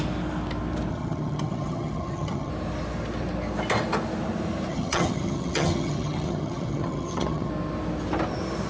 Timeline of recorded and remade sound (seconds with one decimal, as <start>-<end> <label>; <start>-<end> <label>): 0.0-0.9 recorded; 0.9-2.5 remade; 2.5-4.7 recorded; 4.7-7.5 remade; 7.5-8.7 recorded